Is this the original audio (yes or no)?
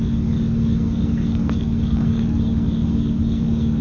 no